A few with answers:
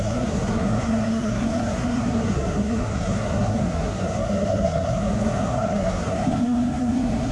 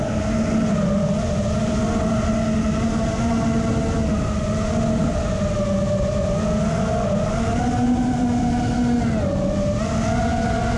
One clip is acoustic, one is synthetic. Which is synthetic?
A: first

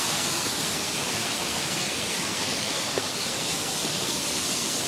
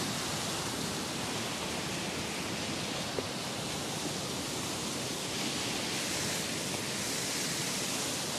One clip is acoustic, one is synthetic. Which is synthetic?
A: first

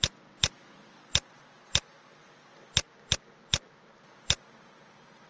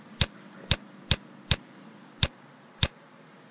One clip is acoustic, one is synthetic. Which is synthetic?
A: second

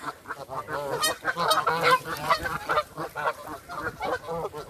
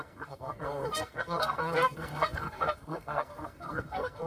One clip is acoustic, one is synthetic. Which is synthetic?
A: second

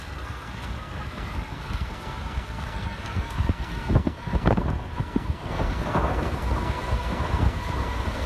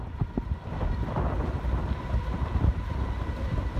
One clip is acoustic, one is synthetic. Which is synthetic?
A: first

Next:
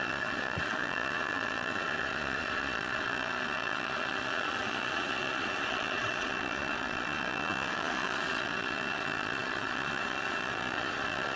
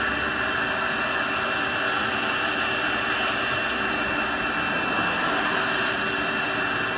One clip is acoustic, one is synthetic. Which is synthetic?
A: first